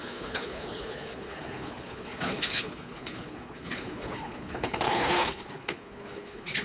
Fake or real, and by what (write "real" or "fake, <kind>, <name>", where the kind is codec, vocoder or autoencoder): fake, codec, HILCodec